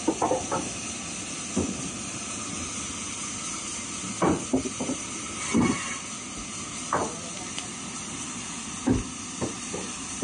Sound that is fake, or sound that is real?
real